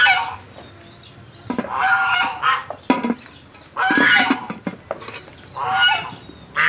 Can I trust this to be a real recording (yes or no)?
yes